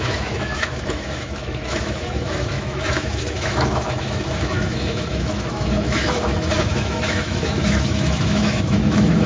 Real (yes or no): no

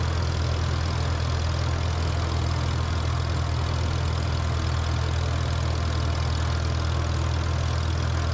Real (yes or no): yes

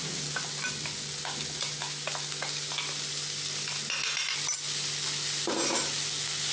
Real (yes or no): yes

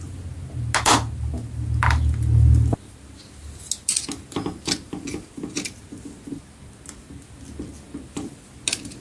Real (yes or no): yes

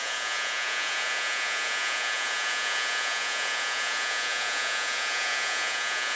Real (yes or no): no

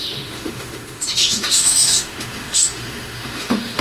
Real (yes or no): no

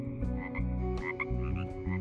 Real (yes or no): yes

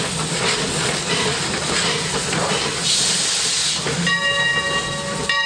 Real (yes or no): yes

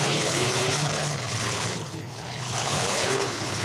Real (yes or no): no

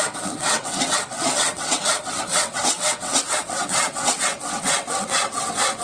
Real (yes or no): no